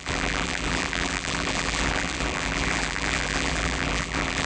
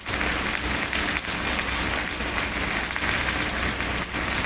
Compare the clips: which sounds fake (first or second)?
first